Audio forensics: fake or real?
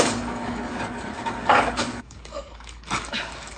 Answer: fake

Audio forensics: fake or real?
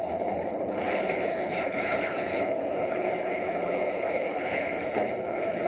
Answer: fake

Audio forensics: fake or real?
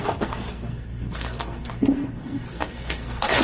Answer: fake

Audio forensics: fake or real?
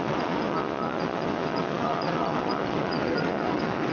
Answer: fake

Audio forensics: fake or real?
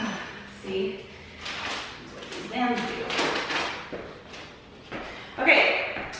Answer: real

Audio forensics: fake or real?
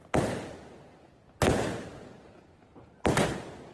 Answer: real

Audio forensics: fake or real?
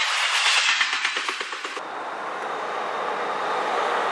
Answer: real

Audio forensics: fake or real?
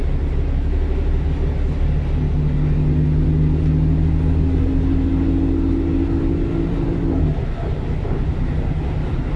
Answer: real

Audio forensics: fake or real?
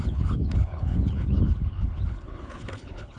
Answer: fake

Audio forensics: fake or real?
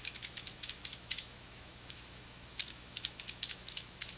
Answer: fake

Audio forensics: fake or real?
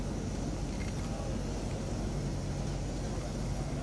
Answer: real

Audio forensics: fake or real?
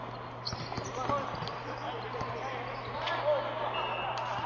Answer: real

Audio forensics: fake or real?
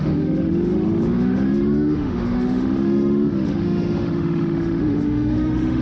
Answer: fake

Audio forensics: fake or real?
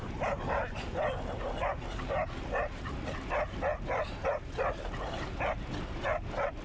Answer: real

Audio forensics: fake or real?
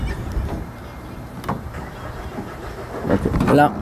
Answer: real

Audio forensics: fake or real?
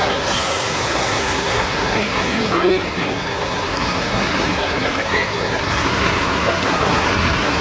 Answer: fake